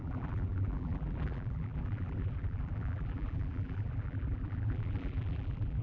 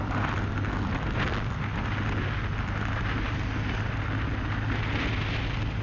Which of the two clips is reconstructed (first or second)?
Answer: first